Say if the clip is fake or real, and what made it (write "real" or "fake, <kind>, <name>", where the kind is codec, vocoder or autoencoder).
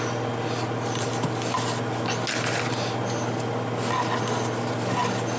real